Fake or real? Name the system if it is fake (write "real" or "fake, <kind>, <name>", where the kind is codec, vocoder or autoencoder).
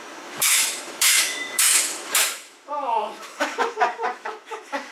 fake, autoencoder, DAC-VAE